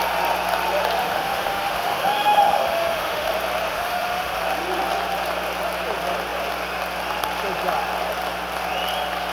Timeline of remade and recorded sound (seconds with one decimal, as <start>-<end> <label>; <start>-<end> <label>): 0.0-1.0 recorded; 1.0-3.3 remade; 3.3-3.7 recorded; 3.7-4.4 remade; 4.4-9.3 recorded